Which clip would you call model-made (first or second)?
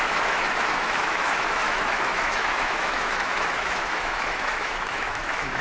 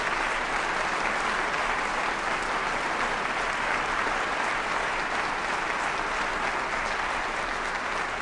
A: first